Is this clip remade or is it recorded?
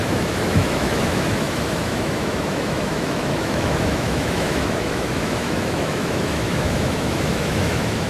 remade